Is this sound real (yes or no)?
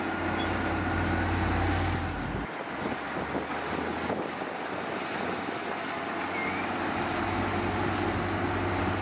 yes